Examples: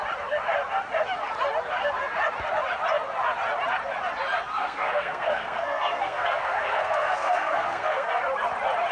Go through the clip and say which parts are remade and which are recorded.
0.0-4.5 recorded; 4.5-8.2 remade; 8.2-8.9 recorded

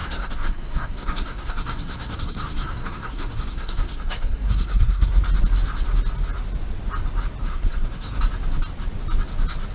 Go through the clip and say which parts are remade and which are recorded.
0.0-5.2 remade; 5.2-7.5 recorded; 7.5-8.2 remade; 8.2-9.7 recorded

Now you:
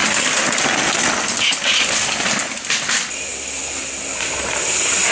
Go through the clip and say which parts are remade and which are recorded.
0.0-5.1 recorded

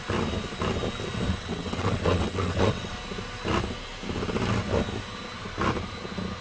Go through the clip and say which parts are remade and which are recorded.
0.0-1.4 recorded; 1.4-2.9 remade; 2.9-6.4 recorded